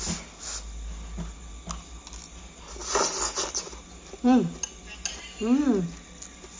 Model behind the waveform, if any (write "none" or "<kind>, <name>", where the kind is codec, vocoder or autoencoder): none